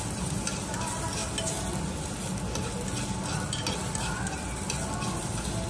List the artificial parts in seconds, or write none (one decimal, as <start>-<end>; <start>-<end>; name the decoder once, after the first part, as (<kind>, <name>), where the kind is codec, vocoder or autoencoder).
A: none